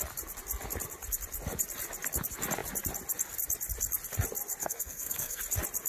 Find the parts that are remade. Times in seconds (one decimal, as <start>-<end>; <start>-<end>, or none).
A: 4.6-5.4